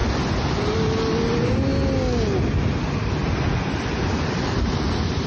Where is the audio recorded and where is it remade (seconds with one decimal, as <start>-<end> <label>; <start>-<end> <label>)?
0.0-5.3 recorded